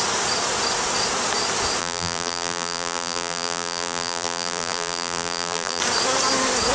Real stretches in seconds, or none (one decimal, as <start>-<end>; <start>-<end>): 0.0-1.8; 5.8-6.7